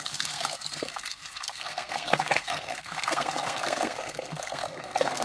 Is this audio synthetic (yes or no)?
yes